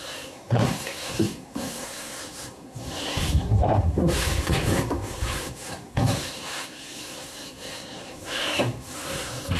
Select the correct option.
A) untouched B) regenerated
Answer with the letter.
B